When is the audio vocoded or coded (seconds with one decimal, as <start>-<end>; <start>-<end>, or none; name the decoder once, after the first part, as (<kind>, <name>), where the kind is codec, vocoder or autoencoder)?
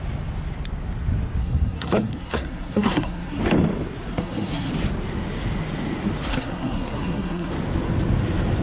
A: 1.4-3.4 (codec, SNAC); 4.1-4.7; 6.3-7.5